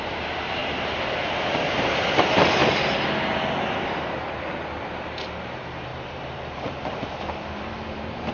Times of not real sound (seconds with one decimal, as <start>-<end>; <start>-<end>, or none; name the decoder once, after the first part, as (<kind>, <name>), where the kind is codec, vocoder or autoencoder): 0.0-0.6 (vocoder, BigVGAN v2); 1.1-2.6; 4.7-8.3